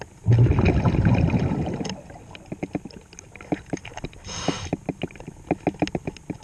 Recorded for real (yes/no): yes